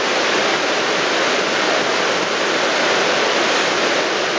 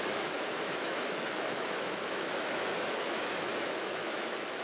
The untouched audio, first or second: first